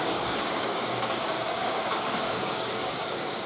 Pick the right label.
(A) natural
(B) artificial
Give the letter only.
B